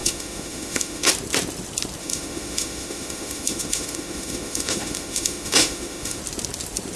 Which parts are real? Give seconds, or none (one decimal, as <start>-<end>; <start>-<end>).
1.1-2.0; 6.2-7.0